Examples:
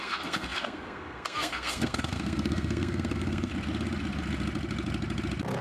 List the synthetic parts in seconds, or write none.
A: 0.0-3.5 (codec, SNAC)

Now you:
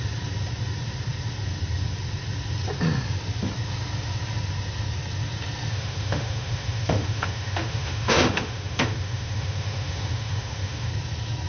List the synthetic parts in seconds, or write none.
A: 5.7-10.9 (autoencoder, DAC-VAE)

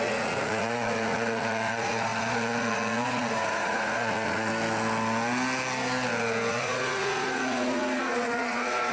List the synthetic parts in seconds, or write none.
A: 0.0-4.5 (vocoder, Vocos); 6.5-8.9

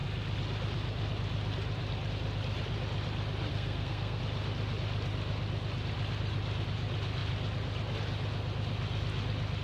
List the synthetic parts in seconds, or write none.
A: 3.5-4.2 (codec, SNAC)